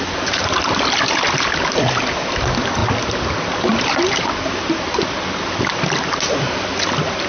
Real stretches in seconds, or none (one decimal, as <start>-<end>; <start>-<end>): 0.0-7.3